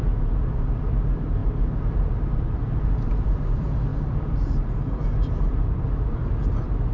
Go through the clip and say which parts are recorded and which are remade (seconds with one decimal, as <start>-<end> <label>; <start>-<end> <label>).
0.0-6.9 remade

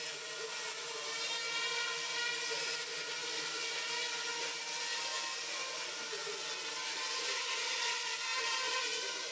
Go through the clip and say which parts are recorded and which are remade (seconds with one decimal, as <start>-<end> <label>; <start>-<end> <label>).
0.0-8.3 recorded; 8.3-8.8 remade; 8.8-9.3 recorded

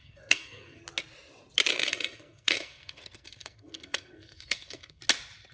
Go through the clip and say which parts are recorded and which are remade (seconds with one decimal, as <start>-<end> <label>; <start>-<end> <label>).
0.0-0.8 remade; 0.8-1.7 recorded; 1.7-5.0 remade; 5.0-5.5 recorded

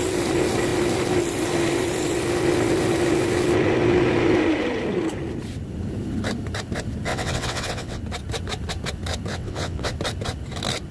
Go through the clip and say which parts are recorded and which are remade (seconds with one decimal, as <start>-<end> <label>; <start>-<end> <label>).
0.0-7.1 recorded; 7.1-8.0 remade; 8.0-9.3 recorded; 9.3-9.9 remade; 9.9-10.9 recorded

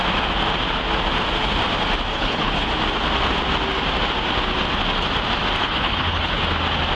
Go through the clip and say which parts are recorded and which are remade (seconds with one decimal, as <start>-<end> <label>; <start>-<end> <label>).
0.0-2.1 recorded; 2.1-2.7 remade; 2.7-5.6 recorded; 5.6-6.4 remade; 6.4-6.9 recorded

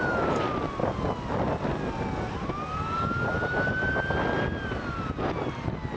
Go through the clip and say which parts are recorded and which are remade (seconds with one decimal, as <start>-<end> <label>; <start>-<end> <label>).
0.0-6.0 recorded

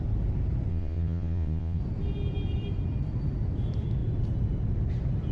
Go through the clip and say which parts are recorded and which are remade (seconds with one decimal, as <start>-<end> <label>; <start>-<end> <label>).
0.0-0.7 recorded; 0.7-1.8 remade; 1.8-5.3 recorded

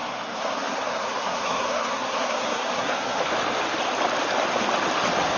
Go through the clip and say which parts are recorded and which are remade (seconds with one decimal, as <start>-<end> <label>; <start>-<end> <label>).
0.0-3.2 remade; 3.2-5.4 recorded